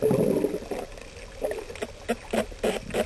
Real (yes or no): yes